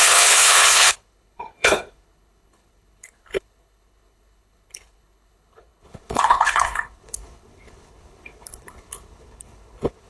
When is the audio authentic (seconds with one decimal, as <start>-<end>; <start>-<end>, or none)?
none